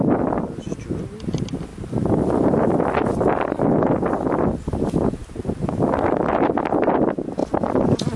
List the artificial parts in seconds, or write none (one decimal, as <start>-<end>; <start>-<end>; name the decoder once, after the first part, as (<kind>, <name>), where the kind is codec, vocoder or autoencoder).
none

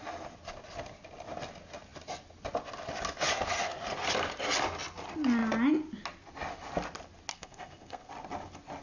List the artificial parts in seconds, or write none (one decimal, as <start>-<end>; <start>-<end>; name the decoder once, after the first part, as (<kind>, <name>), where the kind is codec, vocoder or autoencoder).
7.3-8.1 (codec, SNAC)

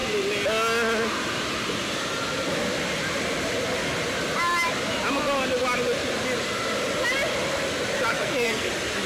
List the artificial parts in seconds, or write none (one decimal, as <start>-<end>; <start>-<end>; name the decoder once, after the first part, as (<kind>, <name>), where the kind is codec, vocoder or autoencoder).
8.1-8.7 (codec, SNAC)

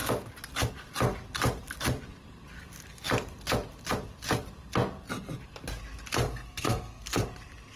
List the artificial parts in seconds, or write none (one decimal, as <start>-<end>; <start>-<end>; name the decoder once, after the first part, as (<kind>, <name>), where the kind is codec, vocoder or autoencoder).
6.3-7.2 (codec, SNAC)